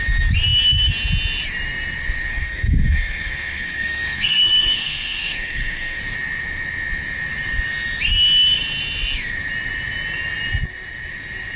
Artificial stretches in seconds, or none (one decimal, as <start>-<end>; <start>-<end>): 2.3-6.0